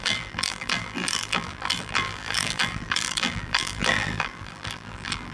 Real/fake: fake